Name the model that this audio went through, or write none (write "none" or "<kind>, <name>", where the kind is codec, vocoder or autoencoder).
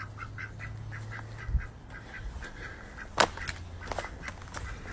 none